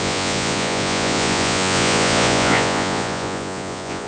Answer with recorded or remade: remade